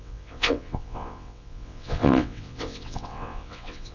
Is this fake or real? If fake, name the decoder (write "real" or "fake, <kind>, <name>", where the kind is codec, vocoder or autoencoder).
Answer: fake, vocoder, WaveNeXt